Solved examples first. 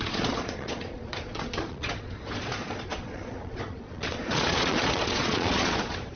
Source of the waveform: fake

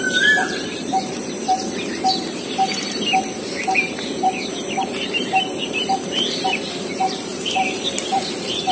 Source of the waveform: fake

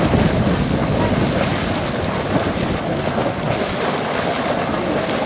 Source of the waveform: real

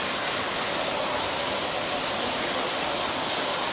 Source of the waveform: real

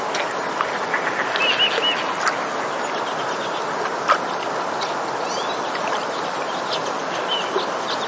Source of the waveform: real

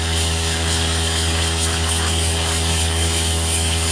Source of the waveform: fake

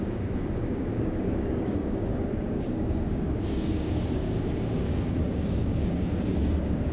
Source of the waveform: fake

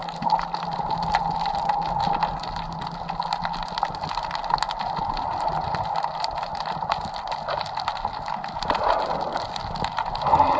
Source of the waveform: real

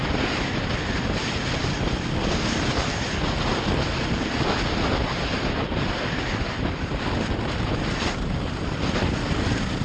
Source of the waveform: real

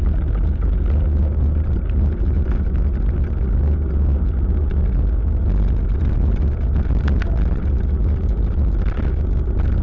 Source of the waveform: real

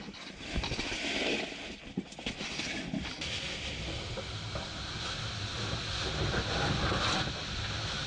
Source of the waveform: real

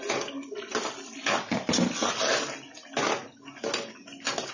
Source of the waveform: real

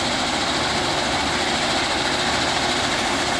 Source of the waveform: real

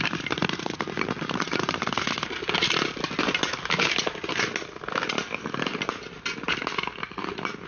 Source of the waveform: real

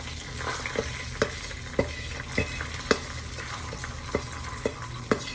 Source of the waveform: real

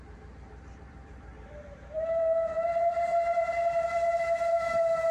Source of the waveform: fake